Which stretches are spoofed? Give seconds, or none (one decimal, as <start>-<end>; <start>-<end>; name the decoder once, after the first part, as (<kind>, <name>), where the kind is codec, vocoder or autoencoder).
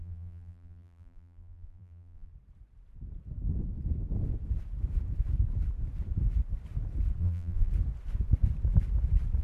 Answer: 0.0-2.3 (vocoder, BigVGAN v2); 7.2-7.7